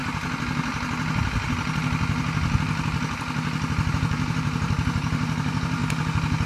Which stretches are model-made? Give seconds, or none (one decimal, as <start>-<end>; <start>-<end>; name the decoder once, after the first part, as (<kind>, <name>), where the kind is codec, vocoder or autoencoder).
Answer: 3.9-5.8 (vocoder, BigVGAN v2)